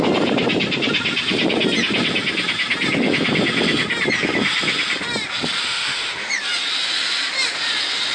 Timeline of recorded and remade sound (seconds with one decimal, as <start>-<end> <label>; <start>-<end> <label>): 0.0-5.6 recorded; 5.6-6.3 remade; 6.3-8.1 recorded